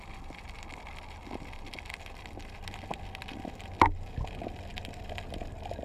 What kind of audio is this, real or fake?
real